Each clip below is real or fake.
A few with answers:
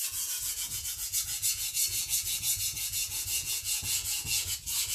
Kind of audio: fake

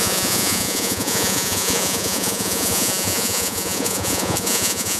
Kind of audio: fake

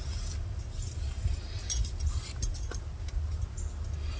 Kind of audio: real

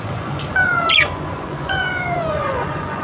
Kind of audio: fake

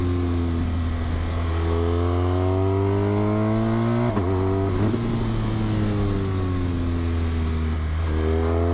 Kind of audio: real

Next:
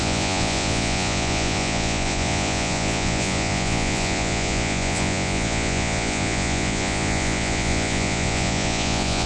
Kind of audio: fake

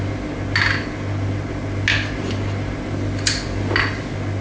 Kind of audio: real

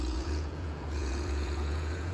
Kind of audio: fake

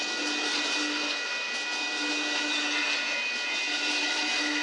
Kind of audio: real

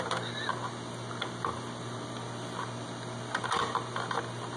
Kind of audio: real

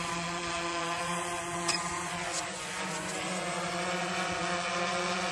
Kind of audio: fake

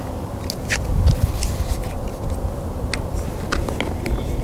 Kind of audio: real